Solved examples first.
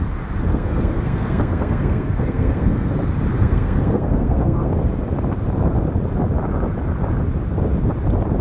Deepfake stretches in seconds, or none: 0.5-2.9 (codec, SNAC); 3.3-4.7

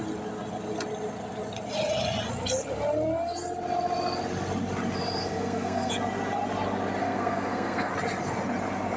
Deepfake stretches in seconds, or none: 5.2-5.9 (codec, SNAC); 7.0-7.9